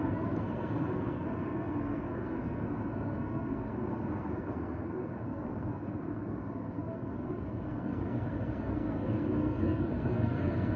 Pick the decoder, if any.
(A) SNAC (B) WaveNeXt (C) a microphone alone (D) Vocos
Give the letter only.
A